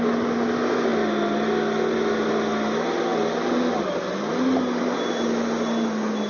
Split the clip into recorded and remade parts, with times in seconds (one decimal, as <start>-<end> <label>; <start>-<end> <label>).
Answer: 0.0-6.3 recorded